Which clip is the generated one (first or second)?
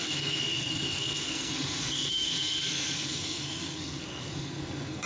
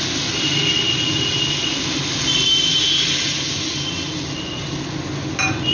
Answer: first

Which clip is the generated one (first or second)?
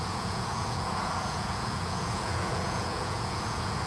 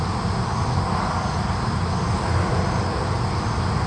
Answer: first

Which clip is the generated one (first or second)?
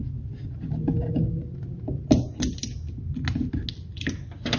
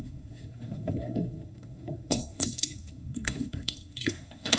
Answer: second